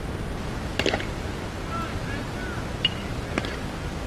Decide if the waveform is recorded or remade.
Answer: recorded